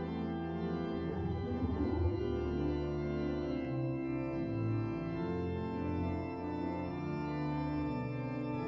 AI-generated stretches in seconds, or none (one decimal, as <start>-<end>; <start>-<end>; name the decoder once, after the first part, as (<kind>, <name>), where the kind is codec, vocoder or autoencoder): 1.1-2.2 (vocoder, Vocos)